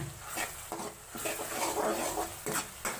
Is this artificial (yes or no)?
no